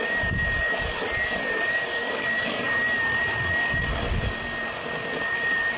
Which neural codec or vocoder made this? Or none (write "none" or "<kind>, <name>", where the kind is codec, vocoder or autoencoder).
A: none